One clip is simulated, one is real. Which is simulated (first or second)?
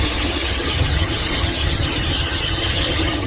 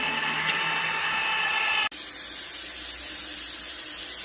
first